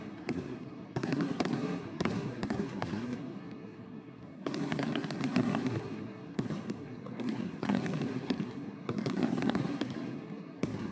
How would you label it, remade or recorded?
remade